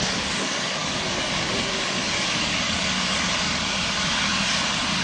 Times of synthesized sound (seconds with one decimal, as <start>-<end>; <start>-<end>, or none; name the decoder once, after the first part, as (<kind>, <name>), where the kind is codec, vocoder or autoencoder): 0.0-5.0 (codec, DAC)